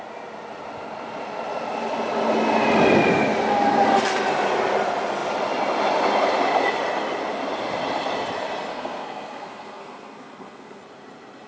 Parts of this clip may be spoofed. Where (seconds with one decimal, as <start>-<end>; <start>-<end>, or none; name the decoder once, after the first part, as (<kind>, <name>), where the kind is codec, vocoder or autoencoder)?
8.7-10.8 (codec, SNAC)